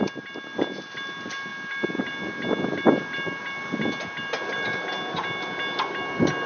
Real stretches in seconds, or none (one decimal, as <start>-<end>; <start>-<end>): 0.0-6.5